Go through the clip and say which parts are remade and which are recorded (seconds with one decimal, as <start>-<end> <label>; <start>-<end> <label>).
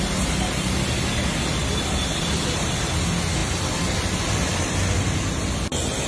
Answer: 0.0-1.6 recorded; 1.6-2.7 remade; 2.7-3.4 recorded; 3.4-4.9 remade; 4.9-6.1 recorded